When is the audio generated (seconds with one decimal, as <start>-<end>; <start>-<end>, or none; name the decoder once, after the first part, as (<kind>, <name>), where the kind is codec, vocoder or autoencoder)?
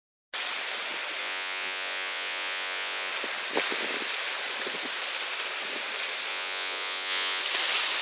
1.2-3.1 (vocoder, Vocos); 6.3-7.4